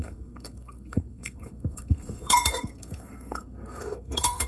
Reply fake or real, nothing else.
fake